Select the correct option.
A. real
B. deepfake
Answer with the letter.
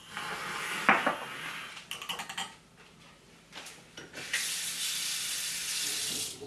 A